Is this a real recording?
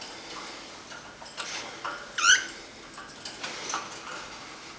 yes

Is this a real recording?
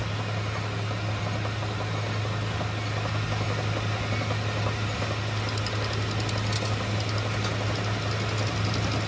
yes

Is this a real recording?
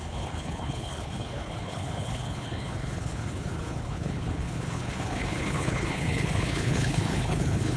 no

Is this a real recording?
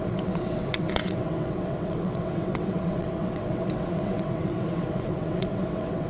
no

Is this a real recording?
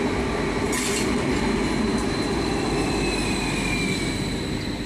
yes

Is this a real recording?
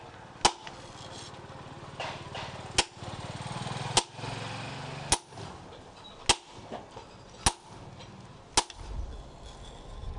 yes